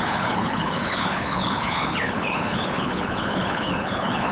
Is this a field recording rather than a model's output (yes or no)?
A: no